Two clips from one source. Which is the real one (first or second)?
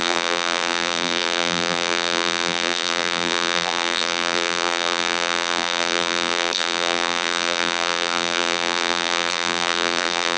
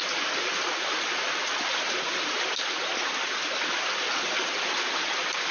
second